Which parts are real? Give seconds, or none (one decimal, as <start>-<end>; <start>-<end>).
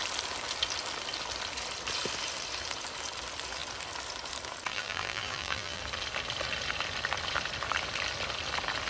0.0-4.7; 5.8-8.9